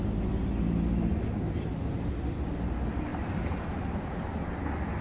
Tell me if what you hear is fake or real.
real